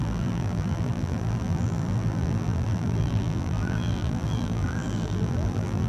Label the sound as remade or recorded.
remade